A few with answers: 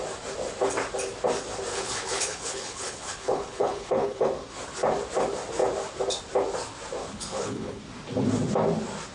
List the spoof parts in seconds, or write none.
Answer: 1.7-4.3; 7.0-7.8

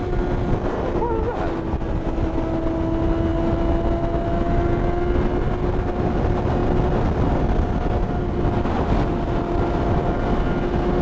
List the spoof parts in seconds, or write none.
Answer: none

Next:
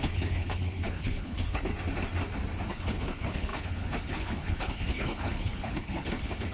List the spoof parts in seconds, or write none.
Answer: 0.0-1.7; 2.7-6.5

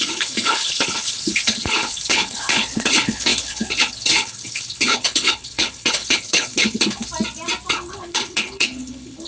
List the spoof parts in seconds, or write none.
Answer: 0.0-7.1; 7.7-9.3

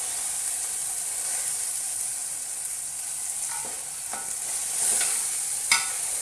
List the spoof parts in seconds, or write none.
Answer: none

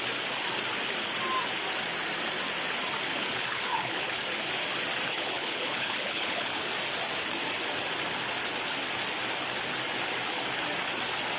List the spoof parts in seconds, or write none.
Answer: 3.1-4.2; 5.1-6.6